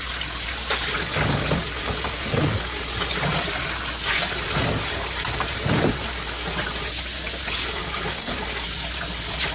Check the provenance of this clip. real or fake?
real